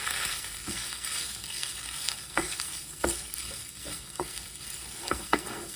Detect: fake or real fake